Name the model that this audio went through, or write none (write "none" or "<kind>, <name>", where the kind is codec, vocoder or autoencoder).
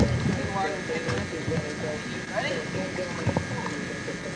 none